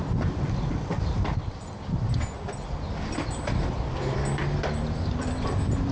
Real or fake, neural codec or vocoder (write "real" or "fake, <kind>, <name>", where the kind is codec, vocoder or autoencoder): real